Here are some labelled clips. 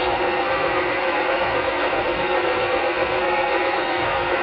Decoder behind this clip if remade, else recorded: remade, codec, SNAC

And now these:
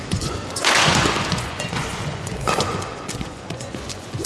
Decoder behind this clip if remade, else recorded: remade, vocoder, Vocos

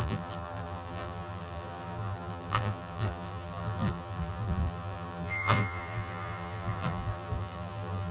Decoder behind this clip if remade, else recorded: remade, vocoder, BigVGAN v2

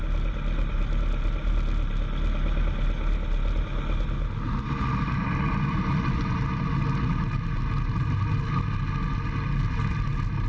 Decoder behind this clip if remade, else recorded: recorded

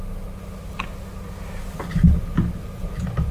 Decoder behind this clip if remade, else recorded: recorded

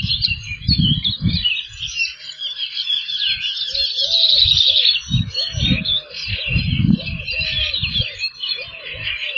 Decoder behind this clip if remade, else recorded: recorded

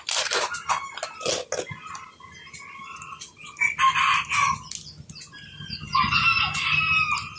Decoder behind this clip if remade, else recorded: recorded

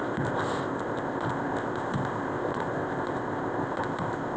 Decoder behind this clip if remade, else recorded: remade, codec, ZipCodec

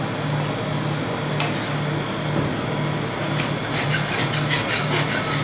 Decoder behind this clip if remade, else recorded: recorded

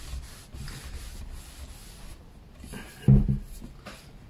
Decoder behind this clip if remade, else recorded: recorded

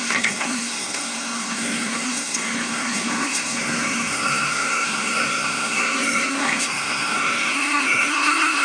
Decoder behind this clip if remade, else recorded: remade, codec, SNAC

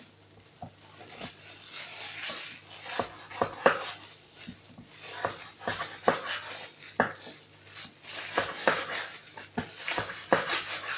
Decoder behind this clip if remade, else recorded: recorded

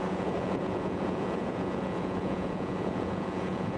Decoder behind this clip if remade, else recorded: remade, vocoder, Vocos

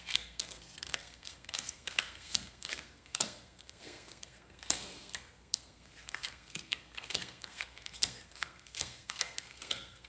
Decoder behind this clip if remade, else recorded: remade, codec, SNAC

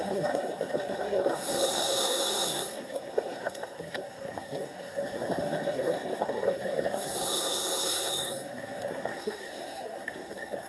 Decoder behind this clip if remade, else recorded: remade, codec, SNAC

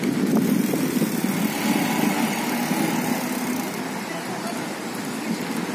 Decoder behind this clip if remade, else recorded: recorded